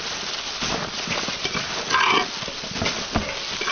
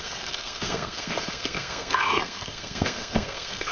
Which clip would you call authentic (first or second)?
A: first